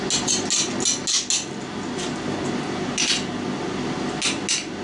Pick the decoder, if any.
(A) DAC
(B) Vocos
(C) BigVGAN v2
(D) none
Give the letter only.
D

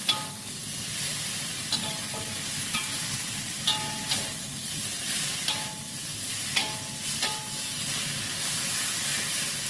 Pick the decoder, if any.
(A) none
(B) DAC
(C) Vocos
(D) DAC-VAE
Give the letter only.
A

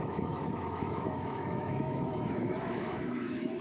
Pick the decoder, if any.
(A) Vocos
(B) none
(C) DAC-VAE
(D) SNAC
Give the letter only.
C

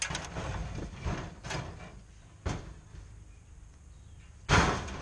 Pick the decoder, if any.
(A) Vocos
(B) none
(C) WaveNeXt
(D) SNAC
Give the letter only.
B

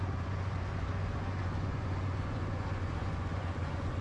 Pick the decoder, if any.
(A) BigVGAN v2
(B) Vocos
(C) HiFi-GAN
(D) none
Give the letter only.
B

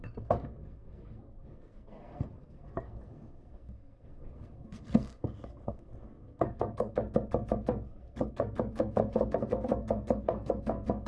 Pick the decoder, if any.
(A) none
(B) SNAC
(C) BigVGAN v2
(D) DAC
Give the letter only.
B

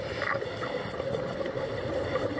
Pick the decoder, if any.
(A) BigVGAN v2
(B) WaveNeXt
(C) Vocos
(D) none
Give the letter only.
D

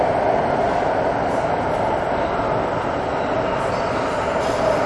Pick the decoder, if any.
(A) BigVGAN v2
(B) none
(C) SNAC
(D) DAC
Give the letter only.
B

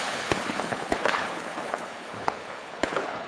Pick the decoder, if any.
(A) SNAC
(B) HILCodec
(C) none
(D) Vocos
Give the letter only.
B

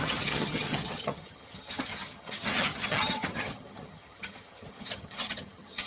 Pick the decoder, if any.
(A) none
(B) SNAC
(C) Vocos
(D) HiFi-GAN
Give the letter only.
D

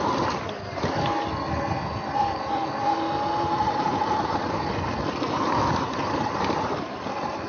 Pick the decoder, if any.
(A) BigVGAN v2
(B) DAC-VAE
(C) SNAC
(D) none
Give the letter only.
D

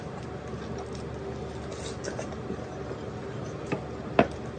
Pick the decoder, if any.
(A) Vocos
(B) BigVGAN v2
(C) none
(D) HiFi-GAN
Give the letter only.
C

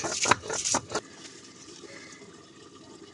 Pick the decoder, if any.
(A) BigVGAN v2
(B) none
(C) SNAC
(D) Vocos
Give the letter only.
B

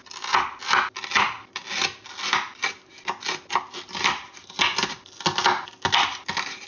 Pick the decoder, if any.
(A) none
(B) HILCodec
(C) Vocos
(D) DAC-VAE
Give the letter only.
A